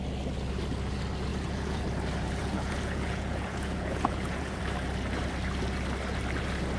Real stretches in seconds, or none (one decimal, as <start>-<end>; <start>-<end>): 0.0-1.3; 1.8-2.4; 4.6-6.8

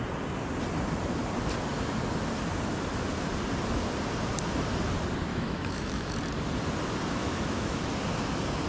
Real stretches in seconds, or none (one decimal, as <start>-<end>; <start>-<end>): 0.0-5.3; 6.1-7.2; 7.8-8.7

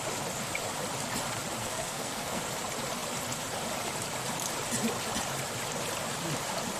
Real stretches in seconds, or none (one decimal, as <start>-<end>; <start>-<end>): 0.0-1.6; 2.4-6.8

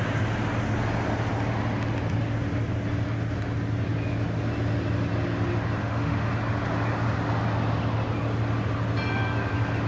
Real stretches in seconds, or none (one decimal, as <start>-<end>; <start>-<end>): 0.0-5.8; 6.3-9.9

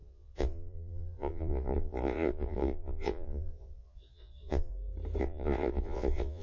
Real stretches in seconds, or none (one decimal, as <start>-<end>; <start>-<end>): 4.7-5.2